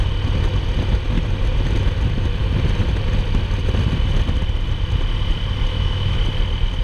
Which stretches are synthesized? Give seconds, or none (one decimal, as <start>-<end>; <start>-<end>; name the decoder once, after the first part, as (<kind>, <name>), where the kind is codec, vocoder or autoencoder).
5.7-6.2 (autoencoder, DAC-VAE)